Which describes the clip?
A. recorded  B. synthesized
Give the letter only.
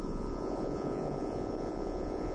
B